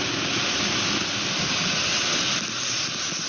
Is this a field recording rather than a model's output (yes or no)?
yes